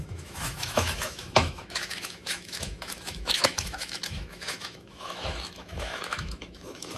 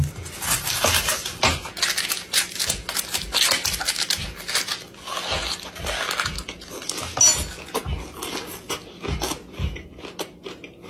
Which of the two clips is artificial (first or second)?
first